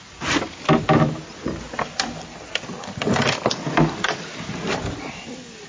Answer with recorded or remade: recorded